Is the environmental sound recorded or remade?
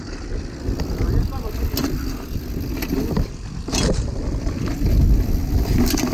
recorded